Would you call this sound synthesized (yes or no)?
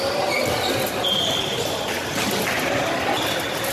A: no